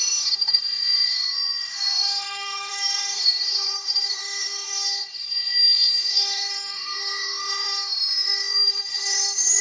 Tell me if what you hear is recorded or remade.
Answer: remade